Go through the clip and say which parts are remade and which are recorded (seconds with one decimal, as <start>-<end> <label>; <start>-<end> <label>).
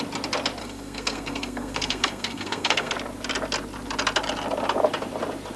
0.0-0.6 recorded; 0.6-2.9 remade; 2.9-5.6 recorded